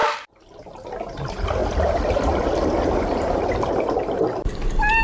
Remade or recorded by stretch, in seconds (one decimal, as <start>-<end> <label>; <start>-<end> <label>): 0.0-1.6 recorded; 1.6-4.2 remade; 4.2-5.0 recorded